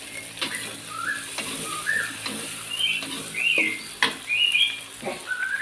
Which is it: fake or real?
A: real